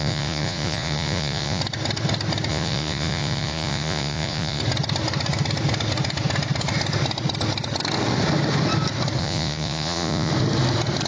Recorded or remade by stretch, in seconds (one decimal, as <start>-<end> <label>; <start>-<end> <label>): 0.0-1.6 remade; 1.6-2.5 recorded; 2.5-4.6 remade; 4.6-9.2 recorded; 9.2-10.3 remade; 10.3-11.1 recorded